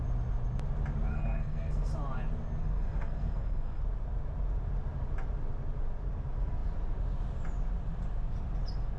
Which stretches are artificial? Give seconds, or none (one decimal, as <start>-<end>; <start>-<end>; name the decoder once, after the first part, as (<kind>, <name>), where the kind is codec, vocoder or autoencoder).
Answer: 1.1-1.9 (codec, SNAC); 2.6-3.8